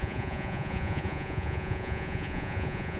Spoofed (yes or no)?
yes